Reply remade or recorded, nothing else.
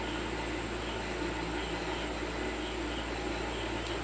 recorded